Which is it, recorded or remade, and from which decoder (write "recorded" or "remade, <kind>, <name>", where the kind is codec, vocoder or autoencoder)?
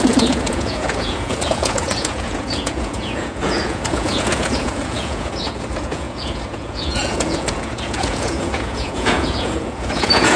remade, vocoder, Vocos